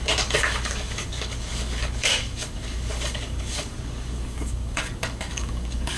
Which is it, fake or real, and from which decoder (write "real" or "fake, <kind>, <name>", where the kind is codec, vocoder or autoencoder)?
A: fake, codec, DAC